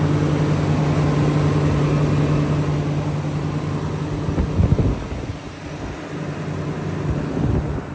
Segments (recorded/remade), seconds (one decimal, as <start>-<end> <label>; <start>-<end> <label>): 0.0-7.9 recorded